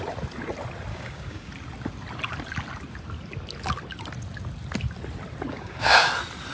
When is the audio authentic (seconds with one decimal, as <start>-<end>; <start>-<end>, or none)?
0.0-0.9; 1.5-5.5; 6.1-6.5